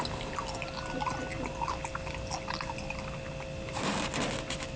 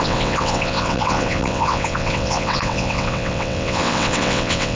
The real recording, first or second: first